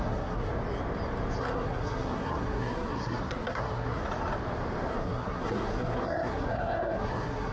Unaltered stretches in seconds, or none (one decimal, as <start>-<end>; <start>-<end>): 0.5-1.4; 4.0-4.9